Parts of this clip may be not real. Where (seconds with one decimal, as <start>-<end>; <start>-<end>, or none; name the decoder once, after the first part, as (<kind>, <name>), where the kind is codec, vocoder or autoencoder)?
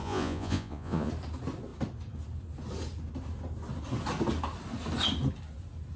0.0-1.1 (vocoder, Vocos)